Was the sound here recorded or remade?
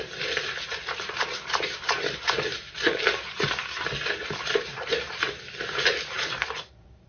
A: remade